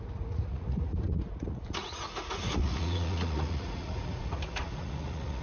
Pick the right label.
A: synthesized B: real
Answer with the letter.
A